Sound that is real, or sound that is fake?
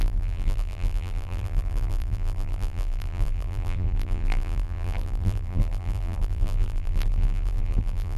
fake